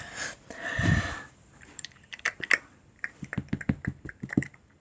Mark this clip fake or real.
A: fake